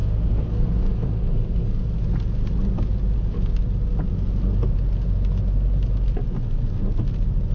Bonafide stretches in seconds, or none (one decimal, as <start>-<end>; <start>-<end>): 1.8-7.5